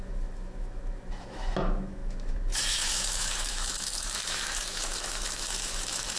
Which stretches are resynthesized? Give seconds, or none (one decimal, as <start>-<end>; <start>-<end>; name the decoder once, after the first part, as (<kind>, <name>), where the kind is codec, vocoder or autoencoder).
0.0-6.2 (autoencoder, DAC-VAE)